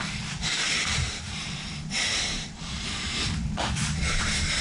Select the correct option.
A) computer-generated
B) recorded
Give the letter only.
A